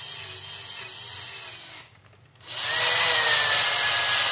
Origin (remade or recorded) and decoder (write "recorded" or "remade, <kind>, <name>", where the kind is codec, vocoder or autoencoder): recorded